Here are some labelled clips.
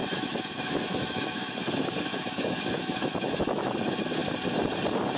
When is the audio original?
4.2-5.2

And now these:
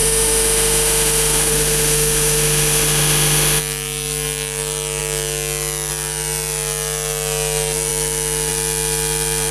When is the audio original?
3.6-9.5

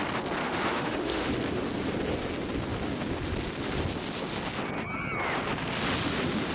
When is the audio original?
0.0-0.4; 1.3-6.5

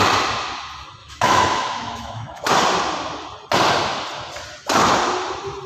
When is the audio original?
0.0-1.0; 2.5-5.7